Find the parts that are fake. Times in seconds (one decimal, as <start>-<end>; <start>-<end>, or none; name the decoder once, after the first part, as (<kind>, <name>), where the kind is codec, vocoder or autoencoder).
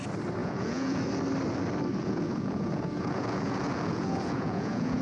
0.4-1.0 (vocoder, Vocos); 2.0-5.0